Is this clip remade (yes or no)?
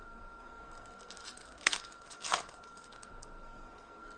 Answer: yes